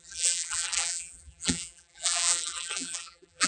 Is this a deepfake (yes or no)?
yes